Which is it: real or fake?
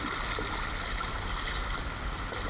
real